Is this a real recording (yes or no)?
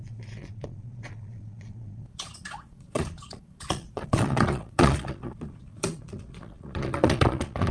no